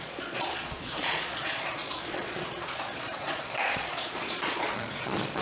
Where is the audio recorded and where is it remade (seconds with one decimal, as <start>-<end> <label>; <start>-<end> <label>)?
0.0-5.4 remade